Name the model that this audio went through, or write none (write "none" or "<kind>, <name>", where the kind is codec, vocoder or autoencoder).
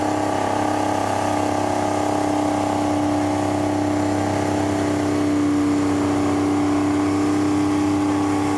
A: none